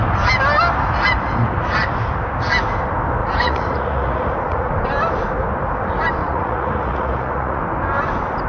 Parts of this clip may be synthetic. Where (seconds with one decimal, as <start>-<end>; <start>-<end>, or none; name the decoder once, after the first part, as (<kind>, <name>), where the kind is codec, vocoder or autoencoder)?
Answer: 3.2-4.7 (vocoder, Vocos); 6.2-7.6